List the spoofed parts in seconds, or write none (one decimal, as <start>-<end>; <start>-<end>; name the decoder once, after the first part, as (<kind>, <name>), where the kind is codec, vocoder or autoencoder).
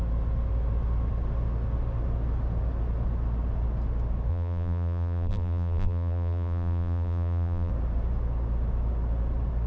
4.3-7.7 (vocoder, BigVGAN v2)